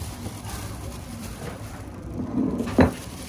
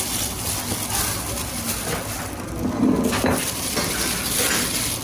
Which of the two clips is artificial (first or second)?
first